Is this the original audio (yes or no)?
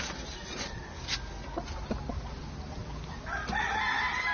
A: yes